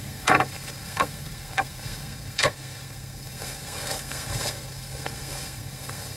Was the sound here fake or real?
fake